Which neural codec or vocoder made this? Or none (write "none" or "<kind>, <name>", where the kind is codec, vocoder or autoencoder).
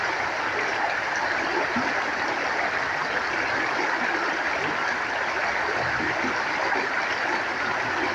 none